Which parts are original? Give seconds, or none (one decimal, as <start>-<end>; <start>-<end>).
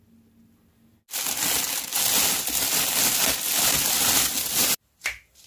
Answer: 0.0-5.5